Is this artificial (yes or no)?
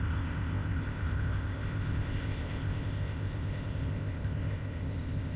yes